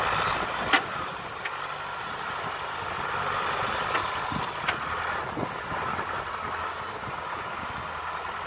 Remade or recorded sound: recorded